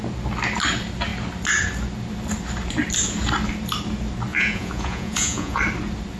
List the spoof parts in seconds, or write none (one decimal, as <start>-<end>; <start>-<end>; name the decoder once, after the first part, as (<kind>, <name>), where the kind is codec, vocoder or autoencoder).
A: 4.3-5.6 (vocoder, Vocos)